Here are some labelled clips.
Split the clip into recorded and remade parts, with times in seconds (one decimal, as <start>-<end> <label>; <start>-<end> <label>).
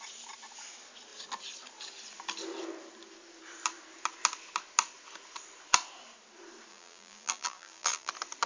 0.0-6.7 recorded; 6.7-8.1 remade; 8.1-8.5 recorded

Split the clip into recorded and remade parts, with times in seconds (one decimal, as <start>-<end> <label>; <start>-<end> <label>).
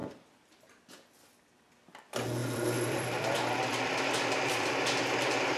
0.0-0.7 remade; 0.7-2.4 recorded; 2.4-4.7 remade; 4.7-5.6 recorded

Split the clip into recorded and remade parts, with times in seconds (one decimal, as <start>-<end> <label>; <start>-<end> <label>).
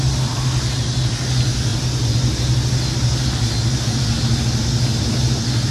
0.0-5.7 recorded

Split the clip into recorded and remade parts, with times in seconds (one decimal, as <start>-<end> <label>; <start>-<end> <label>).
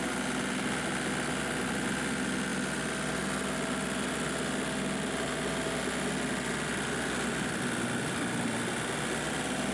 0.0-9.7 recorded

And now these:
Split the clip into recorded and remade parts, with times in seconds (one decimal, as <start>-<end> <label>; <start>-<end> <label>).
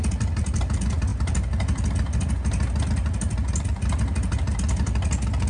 0.0-5.5 recorded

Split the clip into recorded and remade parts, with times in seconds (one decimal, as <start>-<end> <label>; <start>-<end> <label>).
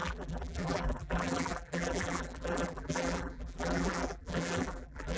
0.0-5.2 remade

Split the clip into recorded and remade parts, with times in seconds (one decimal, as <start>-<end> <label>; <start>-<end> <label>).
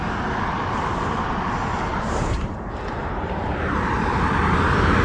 0.0-1.9 recorded; 1.9-3.7 remade; 3.7-5.0 recorded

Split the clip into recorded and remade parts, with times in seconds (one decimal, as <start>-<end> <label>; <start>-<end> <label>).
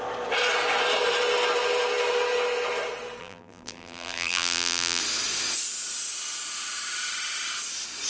0.0-3.2 recorded; 3.2-5.0 remade; 5.0-8.1 recorded